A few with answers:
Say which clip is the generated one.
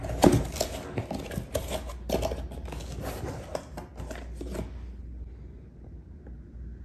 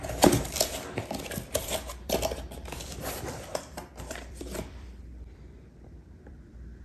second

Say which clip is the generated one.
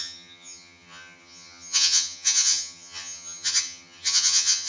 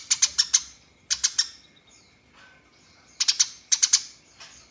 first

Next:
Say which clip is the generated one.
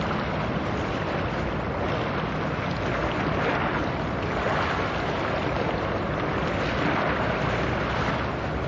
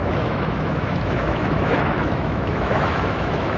second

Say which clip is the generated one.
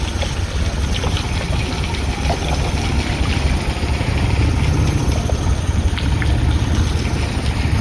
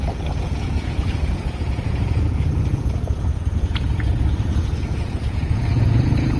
second